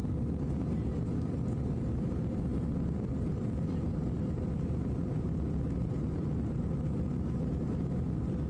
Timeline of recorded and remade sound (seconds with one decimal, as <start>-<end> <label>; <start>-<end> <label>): 0.0-2.5 recorded; 2.5-7.1 remade; 7.1-8.5 recorded